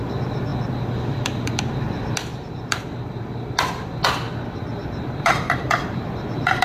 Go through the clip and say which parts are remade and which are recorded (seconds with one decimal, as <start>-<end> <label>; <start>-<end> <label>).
0.0-2.3 recorded; 2.3-2.8 remade; 2.8-4.8 recorded; 4.8-6.6 remade